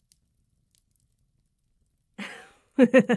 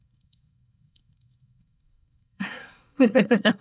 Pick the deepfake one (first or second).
second